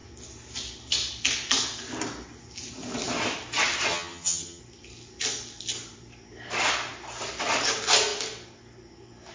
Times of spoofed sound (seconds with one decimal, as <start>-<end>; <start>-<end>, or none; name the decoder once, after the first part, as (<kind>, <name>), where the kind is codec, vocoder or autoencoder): 3.9-4.6 (vocoder, HiFi-GAN)